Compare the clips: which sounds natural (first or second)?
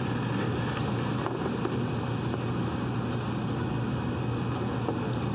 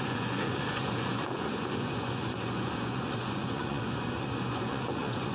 first